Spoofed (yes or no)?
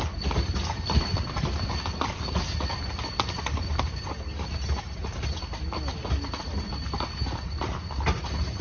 no